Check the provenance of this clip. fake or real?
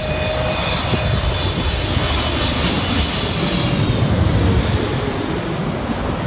fake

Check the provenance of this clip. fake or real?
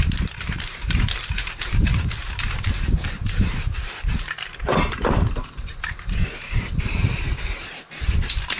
fake